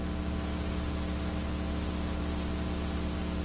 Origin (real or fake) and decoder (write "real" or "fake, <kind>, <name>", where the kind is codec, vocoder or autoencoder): real